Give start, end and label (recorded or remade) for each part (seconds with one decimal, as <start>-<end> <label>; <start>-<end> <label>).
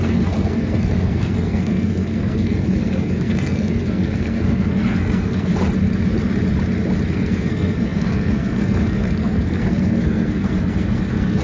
0.0-5.5 remade; 5.5-7.1 recorded; 7.1-11.4 remade